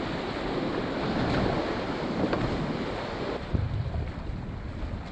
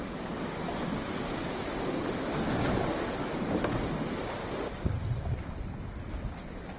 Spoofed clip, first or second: first